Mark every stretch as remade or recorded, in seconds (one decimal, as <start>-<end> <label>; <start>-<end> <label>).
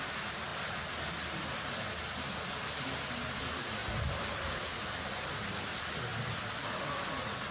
0.0-7.5 recorded